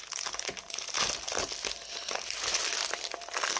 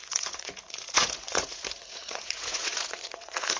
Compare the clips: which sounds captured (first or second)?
first